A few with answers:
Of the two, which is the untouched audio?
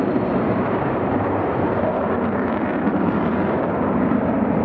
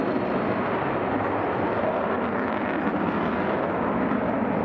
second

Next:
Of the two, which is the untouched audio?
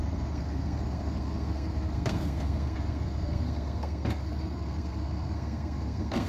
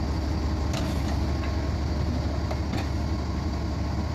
second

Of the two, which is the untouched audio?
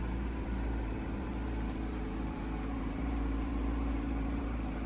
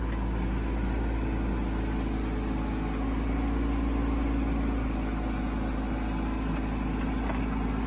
second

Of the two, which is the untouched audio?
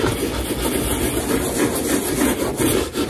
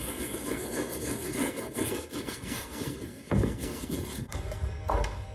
first